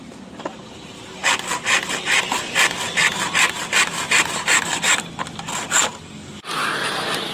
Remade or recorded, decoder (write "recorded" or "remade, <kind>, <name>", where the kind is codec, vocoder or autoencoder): recorded